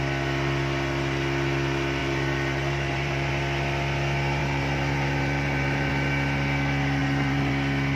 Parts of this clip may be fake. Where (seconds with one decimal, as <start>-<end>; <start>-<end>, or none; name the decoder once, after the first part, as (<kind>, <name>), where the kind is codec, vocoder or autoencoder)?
2.0-3.3 (vocoder, BigVGAN v2); 4.4-5.9; 7.0-7.5